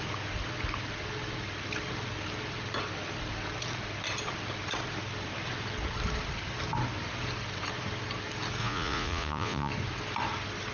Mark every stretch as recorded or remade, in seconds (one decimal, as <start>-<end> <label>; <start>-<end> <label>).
0.0-8.6 recorded; 8.6-9.7 remade; 9.7-10.7 recorded